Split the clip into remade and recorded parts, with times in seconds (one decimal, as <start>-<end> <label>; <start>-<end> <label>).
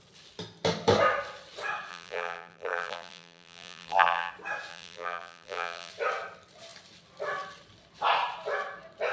0.0-1.9 recorded; 1.9-4.3 remade; 4.3-4.7 recorded; 4.7-5.9 remade; 5.9-9.1 recorded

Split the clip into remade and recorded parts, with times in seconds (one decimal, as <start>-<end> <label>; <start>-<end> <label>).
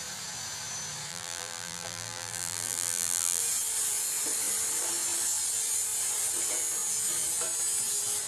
0.0-1.1 recorded; 1.1-3.4 remade; 3.4-8.3 recorded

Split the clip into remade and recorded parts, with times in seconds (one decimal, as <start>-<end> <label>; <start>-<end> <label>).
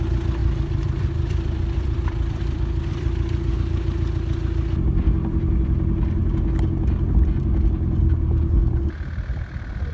0.0-0.4 recorded; 0.4-3.5 remade; 3.5-9.9 recorded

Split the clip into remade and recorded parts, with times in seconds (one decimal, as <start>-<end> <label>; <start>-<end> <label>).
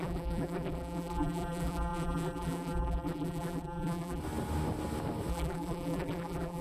0.0-4.2 remade; 4.2-5.3 recorded; 5.3-6.6 remade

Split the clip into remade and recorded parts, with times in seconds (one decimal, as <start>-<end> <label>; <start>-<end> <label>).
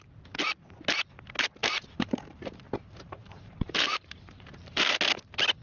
0.0-1.6 recorded; 1.6-5.0 remade; 5.0-5.6 recorded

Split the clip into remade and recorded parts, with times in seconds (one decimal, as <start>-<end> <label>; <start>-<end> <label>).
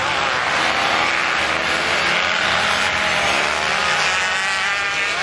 0.0-1.1 remade; 1.1-5.2 recorded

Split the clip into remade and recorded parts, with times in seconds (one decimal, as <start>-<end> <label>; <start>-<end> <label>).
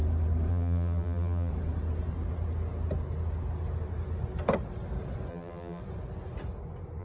0.0-0.5 recorded; 0.5-1.5 remade; 1.5-5.3 recorded; 5.3-5.8 remade; 5.8-7.0 recorded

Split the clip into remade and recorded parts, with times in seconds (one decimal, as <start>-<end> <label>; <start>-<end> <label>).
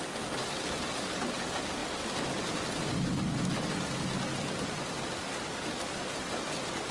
0.0-6.9 recorded